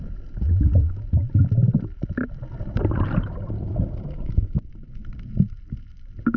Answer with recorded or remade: recorded